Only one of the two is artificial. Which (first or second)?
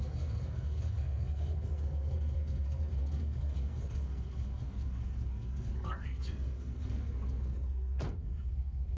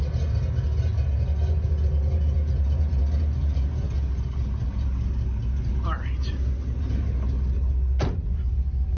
first